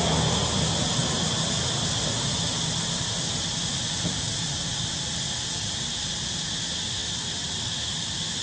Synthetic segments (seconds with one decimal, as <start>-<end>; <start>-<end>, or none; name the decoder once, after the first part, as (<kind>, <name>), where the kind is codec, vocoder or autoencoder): none